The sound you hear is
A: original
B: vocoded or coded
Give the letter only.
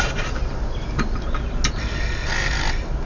A